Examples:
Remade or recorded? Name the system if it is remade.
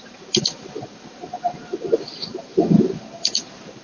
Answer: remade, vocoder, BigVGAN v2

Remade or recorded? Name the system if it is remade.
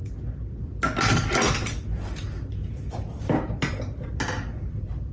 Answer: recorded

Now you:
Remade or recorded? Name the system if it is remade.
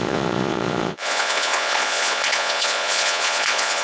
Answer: remade, vocoder, Vocos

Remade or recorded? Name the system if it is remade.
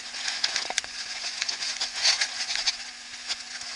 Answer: remade, vocoder, Vocos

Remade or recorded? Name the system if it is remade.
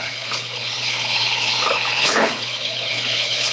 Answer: remade, codec, HILCodec